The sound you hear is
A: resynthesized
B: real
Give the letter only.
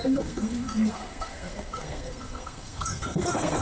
A